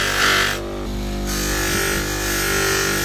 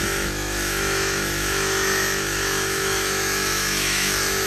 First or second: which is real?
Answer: first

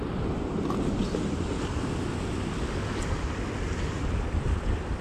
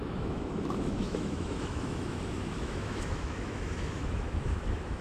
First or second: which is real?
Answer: first